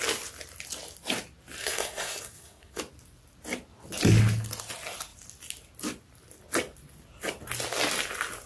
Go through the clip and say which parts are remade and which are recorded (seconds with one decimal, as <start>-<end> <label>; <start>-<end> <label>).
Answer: 0.0-1.6 recorded; 1.6-2.8 remade; 2.8-8.5 recorded